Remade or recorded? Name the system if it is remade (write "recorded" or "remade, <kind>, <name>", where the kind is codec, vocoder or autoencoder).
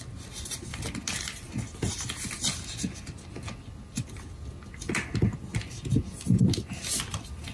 recorded